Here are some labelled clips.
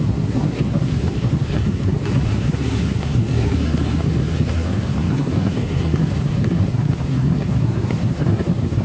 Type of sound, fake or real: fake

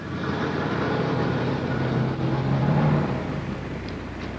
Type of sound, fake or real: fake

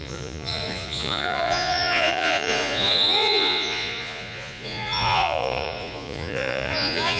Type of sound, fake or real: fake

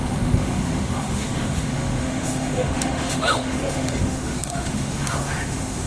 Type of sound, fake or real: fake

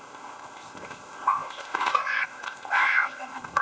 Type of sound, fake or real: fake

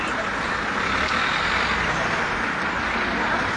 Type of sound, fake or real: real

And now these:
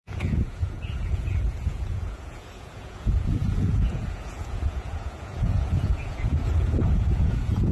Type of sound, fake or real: fake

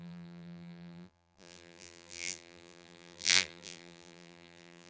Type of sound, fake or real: fake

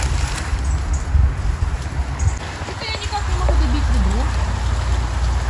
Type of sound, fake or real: real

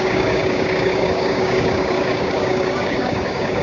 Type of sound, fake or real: fake